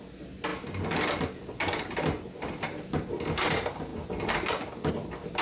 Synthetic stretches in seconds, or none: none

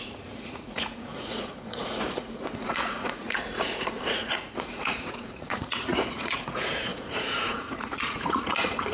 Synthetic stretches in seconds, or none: 0.0-8.9 (vocoder, Vocos)

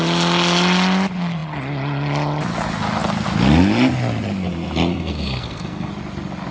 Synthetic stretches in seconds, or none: 4.9-5.9 (codec, SNAC)

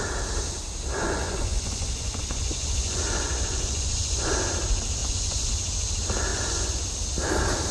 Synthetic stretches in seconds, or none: 1.0-4.3 (vocoder, Vocos); 5.0-5.5; 6.3-6.9

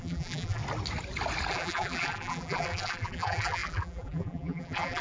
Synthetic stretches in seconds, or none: 0.0-0.6 (vocoder, BigVGAN v2); 1.5-5.0

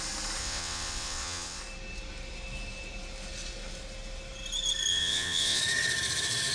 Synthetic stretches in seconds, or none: 0.4-1.6 (vocoder, WaveNeXt); 4.9-5.6